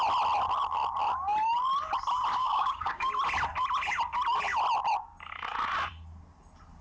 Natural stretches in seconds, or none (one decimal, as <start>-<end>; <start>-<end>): 0.0-2.4; 3.1-6.8